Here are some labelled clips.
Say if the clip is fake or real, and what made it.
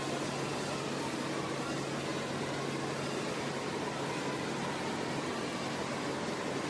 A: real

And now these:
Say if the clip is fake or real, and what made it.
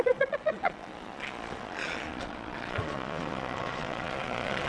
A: fake, vocoder, Vocos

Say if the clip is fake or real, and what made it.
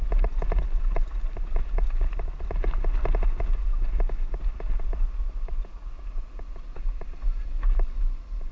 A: real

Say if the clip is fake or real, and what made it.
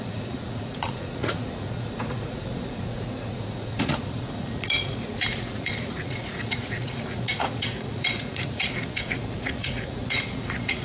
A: fake, vocoder, Vocos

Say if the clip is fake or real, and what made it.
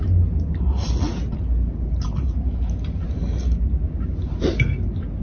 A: real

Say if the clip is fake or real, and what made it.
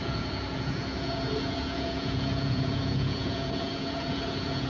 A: fake, vocoder, Vocos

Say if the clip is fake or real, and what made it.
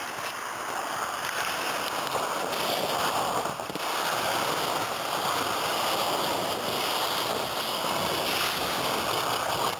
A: real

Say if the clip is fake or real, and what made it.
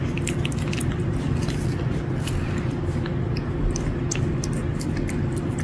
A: real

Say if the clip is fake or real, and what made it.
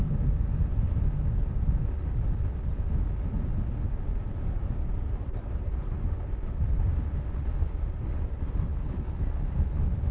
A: real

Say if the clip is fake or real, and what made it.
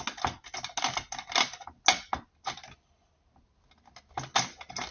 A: real